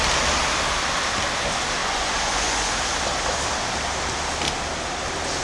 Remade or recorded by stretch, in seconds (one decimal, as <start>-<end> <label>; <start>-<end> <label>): 0.0-1.8 recorded; 1.8-2.7 remade; 2.7-5.4 recorded